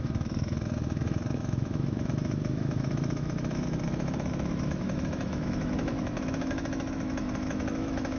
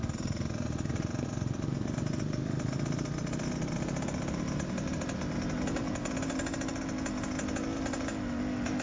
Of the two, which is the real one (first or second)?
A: second